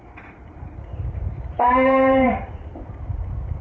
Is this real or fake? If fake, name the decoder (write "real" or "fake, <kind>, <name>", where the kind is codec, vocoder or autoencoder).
fake, vocoder, BigVGAN v2